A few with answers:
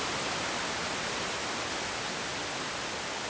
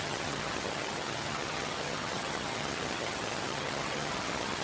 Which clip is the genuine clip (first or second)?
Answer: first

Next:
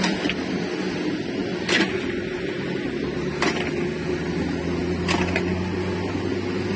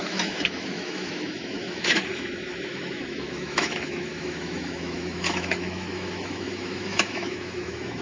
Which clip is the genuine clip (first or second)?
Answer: first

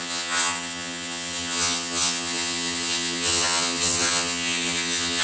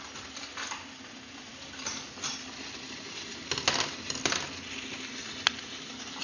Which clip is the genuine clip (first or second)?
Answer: second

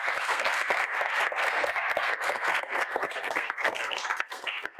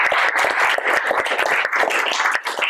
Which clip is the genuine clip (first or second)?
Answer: second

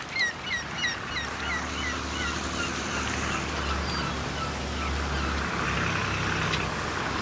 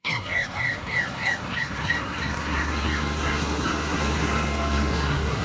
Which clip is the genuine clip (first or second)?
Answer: first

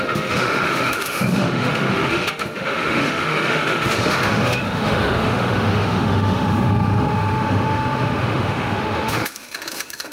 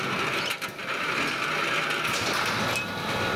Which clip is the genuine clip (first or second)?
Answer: second